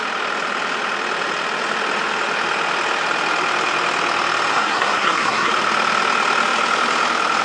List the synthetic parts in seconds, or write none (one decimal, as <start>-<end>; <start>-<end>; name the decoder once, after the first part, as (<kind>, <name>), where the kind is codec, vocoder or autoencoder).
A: 4.5-5.5 (codec, SNAC)

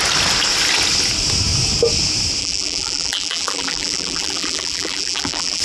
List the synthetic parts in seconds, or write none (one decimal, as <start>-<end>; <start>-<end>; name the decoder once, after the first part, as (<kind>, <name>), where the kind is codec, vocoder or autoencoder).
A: 2.4-5.6 (vocoder, BigVGAN v2)

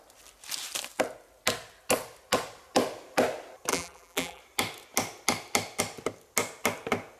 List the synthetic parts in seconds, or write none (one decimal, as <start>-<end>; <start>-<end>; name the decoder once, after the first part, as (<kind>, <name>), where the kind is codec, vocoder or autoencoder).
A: 3.7-4.4 (vocoder, BigVGAN v2)

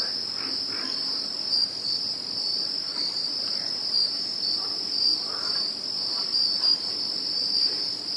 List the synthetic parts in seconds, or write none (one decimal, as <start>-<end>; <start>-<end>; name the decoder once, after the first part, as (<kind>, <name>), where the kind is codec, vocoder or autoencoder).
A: 3.5-4.1 (vocoder, BigVGAN v2)

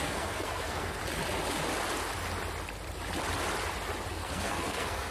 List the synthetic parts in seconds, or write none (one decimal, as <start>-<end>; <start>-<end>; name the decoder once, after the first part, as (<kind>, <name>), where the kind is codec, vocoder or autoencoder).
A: 0.0-1.0 (codec, SNAC); 4.1-5.1

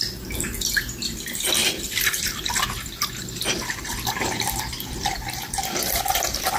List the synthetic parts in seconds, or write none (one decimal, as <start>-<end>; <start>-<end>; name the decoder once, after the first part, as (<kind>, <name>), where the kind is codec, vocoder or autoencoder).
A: 1.6-2.5 (vocoder, BigVGAN v2)

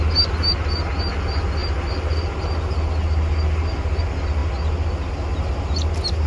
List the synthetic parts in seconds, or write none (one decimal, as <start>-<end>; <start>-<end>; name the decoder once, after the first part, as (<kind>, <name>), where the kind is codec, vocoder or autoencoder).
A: none

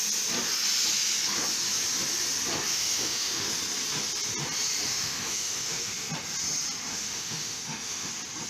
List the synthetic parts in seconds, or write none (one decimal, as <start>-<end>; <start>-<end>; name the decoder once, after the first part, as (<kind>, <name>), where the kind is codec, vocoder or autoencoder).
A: 2.7-3.5 (autoencoder, DAC-VAE); 4.9-6.1; 6.9-8.1